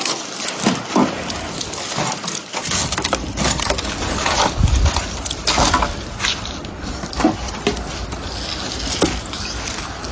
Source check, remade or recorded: recorded